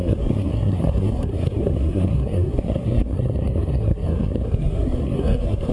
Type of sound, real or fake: fake